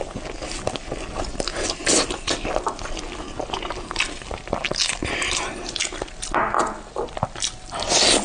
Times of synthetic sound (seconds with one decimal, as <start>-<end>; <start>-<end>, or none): none